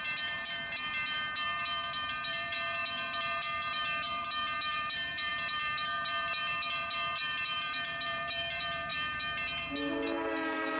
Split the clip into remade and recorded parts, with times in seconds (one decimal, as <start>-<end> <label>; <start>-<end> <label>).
0.0-10.8 remade